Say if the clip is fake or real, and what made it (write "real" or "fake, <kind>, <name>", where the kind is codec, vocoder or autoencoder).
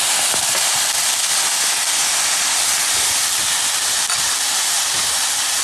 real